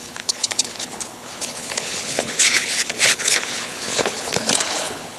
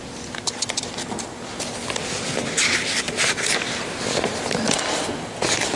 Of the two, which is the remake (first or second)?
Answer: first